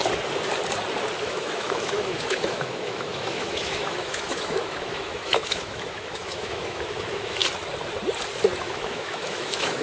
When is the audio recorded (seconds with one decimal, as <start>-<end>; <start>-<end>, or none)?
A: 0.0-1.2; 7.4-8.6